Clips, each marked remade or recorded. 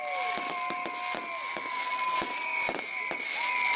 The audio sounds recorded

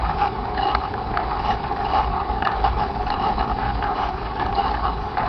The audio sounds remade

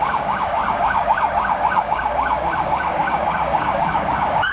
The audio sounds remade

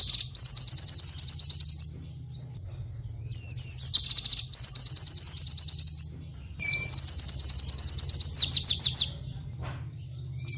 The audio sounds recorded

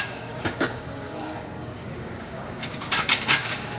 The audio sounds remade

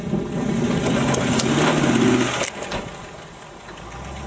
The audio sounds recorded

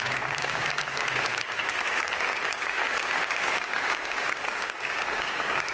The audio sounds remade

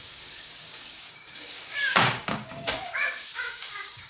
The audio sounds remade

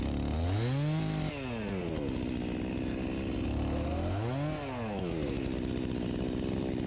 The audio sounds recorded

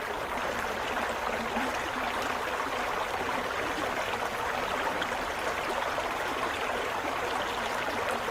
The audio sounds recorded